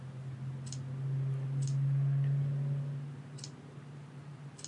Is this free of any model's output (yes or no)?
yes